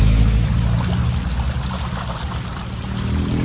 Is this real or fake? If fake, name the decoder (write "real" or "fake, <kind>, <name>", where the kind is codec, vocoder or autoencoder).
real